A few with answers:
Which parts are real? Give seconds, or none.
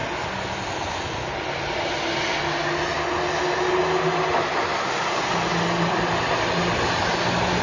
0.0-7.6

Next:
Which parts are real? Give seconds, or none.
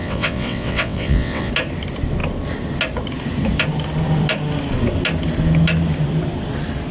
1.5-6.9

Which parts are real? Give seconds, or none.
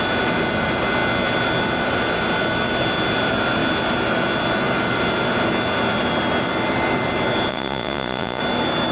0.0-7.5; 8.4-8.9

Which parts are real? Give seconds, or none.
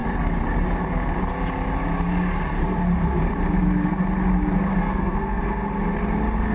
0.0-4.8; 5.4-6.5